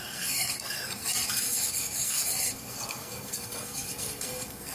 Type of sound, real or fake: fake